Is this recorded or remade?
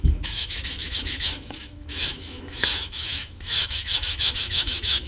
remade